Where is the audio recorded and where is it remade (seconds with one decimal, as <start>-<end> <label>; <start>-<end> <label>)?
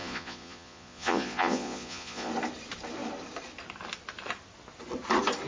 0.0-2.3 remade; 2.3-5.5 recorded